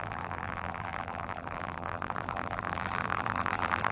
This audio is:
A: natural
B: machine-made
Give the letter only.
B